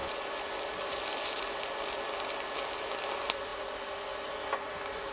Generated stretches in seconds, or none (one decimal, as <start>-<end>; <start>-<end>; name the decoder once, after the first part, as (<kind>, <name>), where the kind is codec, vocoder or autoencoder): none